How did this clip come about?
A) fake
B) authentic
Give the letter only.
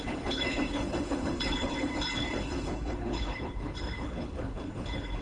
A